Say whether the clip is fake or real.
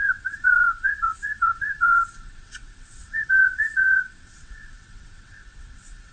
fake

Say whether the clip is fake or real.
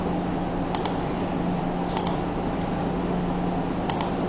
real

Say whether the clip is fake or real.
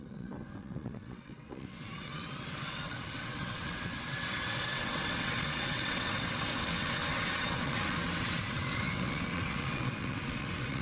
fake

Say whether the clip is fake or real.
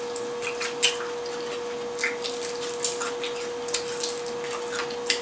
real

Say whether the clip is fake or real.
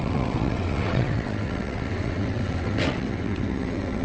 fake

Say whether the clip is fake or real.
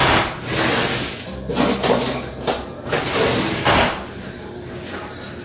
real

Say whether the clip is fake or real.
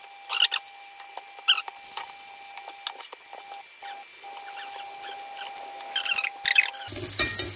real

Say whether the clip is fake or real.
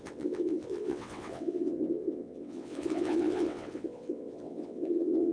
fake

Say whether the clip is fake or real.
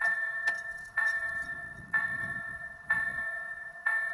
fake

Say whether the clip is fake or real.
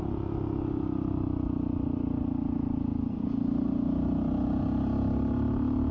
real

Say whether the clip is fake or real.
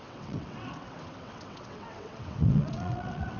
fake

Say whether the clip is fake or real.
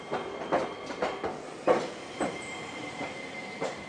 real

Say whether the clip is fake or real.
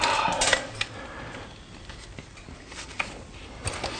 real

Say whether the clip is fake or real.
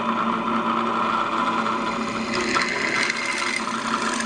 real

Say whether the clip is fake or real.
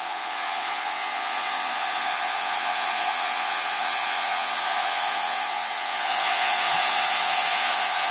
fake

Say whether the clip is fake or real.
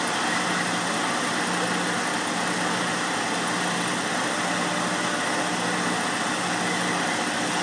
real